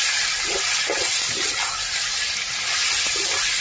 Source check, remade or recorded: recorded